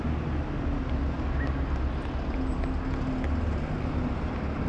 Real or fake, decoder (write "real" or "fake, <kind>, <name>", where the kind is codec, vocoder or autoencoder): real